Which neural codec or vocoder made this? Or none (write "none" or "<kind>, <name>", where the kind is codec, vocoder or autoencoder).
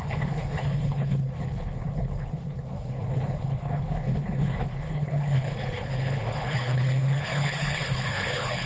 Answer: codec, HILCodec